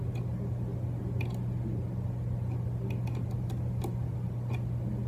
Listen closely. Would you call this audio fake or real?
real